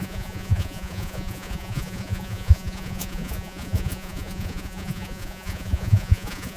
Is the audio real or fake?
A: fake